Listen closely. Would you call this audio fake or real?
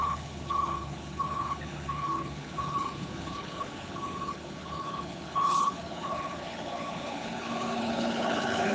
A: fake